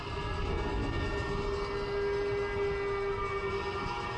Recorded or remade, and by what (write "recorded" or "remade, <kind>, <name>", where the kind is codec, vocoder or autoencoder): recorded